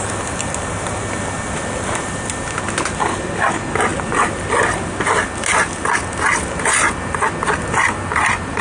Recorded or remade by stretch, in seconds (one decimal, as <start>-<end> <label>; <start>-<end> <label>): 0.0-8.6 recorded